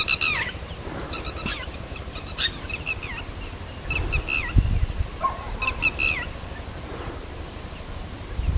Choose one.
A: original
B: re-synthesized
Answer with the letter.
A